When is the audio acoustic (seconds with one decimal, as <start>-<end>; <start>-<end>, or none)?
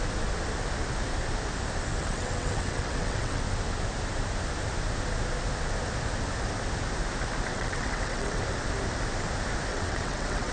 0.0-2.0; 3.4-7.5; 8.4-9.7